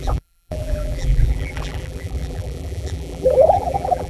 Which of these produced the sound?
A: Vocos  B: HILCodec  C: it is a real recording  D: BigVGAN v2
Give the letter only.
D